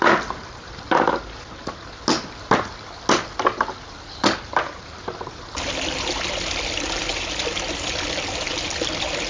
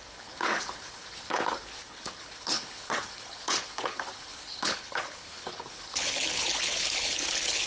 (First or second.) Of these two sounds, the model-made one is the second